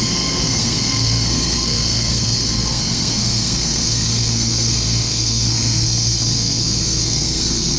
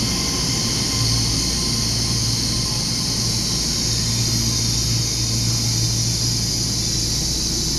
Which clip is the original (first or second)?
second